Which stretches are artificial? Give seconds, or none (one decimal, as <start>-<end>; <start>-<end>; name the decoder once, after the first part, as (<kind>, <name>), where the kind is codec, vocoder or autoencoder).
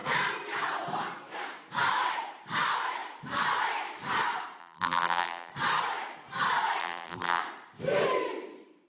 4.6-5.5 (vocoder, BigVGAN v2); 6.8-7.4